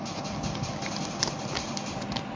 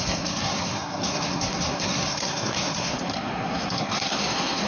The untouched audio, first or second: first